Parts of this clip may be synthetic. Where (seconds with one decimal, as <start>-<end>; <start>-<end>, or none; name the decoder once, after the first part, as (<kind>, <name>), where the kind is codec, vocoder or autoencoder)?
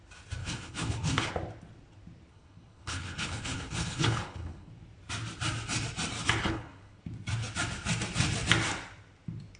0.4-1.3 (codec, HILCodec); 2.3-4.7; 6.4-7.0